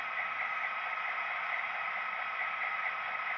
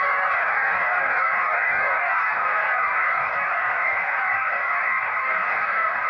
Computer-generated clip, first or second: second